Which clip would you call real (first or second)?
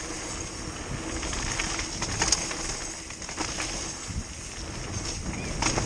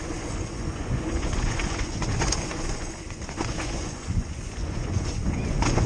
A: first